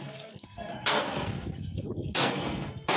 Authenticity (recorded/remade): remade